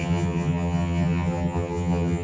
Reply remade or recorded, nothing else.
remade